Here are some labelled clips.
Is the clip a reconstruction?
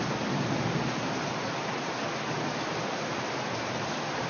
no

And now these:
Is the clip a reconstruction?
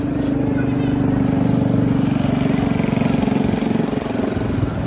no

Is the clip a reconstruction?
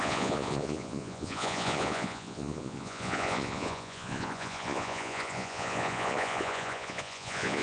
yes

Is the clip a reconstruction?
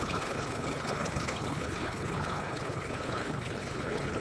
yes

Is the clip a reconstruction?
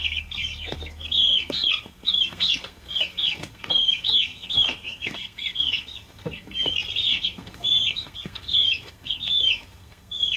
yes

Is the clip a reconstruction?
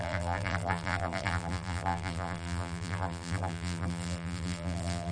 yes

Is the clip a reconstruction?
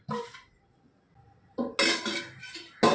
no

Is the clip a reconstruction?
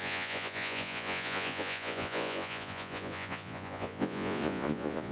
yes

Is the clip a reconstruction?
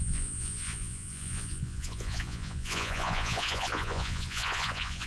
yes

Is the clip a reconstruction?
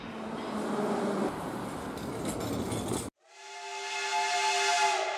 no